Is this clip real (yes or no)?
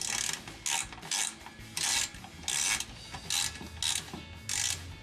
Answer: yes